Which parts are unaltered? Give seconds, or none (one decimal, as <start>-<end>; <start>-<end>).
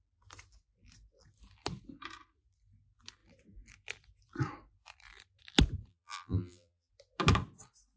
0.0-5.9; 6.9-8.0